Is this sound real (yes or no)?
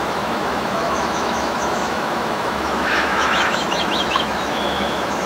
no